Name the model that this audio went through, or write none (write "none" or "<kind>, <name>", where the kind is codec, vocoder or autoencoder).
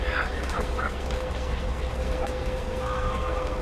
codec, SNAC